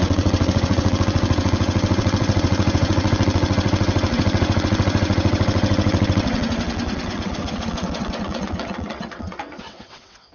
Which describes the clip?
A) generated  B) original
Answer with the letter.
A